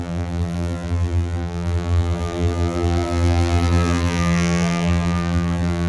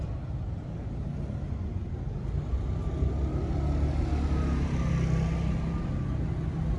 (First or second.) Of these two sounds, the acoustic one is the second